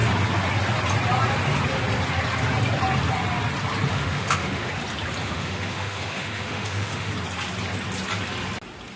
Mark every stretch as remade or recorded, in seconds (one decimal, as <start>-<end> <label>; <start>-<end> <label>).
0.0-3.9 recorded; 3.9-4.7 remade; 4.7-5.2 recorded; 5.2-7.1 remade; 7.1-9.0 recorded